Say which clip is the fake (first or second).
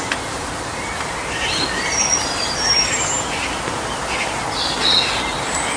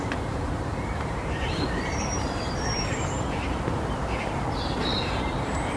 second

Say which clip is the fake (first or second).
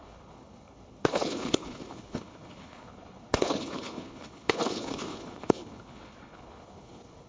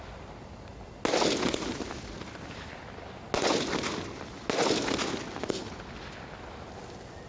first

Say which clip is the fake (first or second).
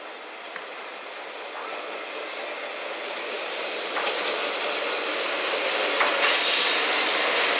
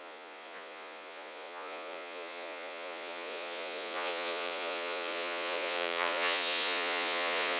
second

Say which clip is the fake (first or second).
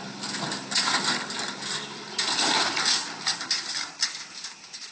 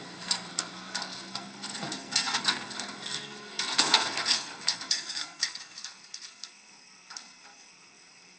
second